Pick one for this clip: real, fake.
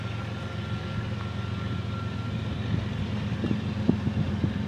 real